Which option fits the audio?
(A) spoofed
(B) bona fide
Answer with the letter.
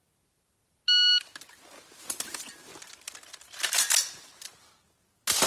B